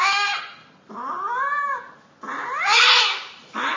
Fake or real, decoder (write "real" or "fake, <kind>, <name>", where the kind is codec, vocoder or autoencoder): real